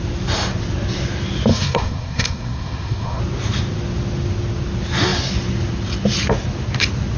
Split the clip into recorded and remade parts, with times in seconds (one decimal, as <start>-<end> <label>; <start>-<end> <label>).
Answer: 0.0-1.5 recorded; 1.5-3.2 remade; 3.2-7.2 recorded